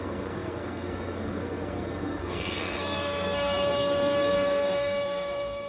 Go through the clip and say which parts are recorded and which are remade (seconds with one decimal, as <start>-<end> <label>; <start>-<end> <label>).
0.0-5.7 remade

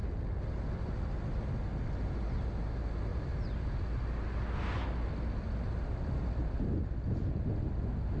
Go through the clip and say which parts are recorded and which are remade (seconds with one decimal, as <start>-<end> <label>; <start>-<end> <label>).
0.0-8.2 recorded

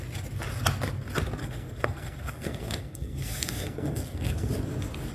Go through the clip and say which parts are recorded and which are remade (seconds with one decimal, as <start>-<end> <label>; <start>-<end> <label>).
0.0-1.4 recorded; 1.4-4.5 remade; 4.5-5.1 recorded